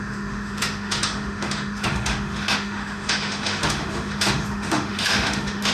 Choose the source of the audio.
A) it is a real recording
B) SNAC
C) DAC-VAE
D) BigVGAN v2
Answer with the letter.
C